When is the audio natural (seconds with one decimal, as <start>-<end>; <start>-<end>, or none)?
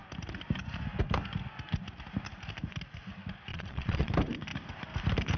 0.0-3.5; 4.1-5.4